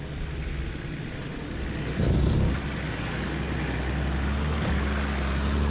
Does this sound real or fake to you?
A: real